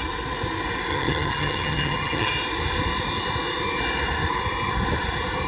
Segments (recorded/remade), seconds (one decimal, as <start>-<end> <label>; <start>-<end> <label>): 0.0-0.9 recorded; 0.9-2.3 remade; 2.3-5.5 recorded